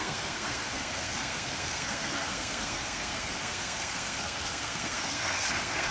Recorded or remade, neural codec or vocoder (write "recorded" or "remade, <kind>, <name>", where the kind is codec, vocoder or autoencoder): remade, codec, SNAC